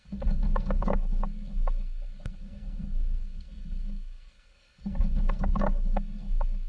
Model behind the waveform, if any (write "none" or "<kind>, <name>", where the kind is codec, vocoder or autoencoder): codec, SNAC